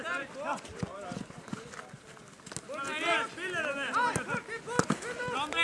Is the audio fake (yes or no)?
no